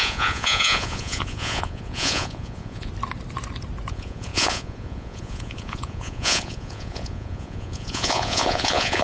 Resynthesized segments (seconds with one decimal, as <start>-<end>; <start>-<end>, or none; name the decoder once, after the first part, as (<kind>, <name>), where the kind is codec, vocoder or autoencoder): 0.0-2.9 (vocoder, Vocos); 3.9-9.0